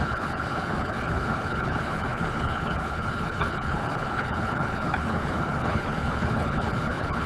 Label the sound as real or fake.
fake